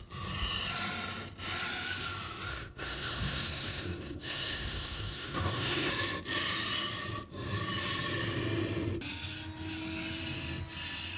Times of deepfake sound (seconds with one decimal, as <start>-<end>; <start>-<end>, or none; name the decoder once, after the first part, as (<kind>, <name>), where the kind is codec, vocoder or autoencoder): 2.5-5.9 (codec, SNAC)